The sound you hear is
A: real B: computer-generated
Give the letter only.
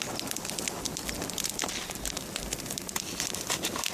A